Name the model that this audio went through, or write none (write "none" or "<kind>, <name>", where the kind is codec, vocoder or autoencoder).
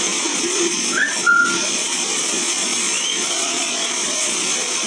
vocoder, Vocos